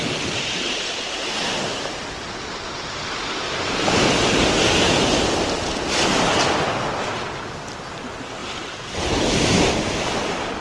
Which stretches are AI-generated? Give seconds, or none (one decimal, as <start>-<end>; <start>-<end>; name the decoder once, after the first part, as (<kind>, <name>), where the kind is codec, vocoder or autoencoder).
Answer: 8.4-10.6 (vocoder, BigVGAN v2)